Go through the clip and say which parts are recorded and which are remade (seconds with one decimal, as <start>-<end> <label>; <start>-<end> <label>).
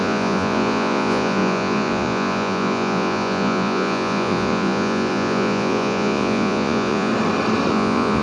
0.0-7.1 remade; 7.1-7.7 recorded; 7.7-8.2 remade